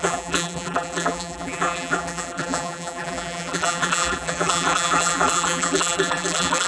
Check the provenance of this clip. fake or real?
fake